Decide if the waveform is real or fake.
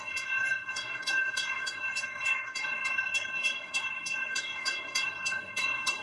fake